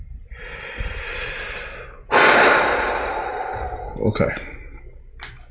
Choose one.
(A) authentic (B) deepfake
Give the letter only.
A